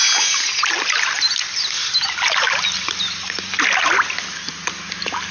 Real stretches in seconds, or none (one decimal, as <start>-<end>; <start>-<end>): 0.0-5.3